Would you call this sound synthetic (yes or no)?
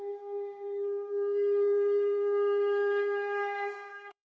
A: yes